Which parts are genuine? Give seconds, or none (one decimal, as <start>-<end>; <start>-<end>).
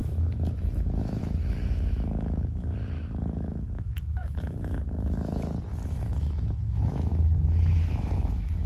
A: 7.1-7.8